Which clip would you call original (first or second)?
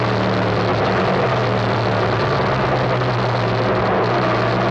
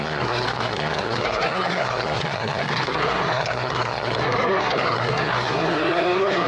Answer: first